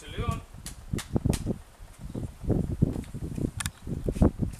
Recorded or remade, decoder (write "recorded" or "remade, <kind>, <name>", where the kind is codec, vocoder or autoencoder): recorded